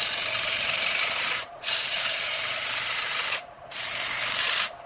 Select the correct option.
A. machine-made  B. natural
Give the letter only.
A